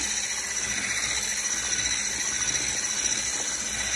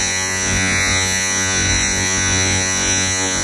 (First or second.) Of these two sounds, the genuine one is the first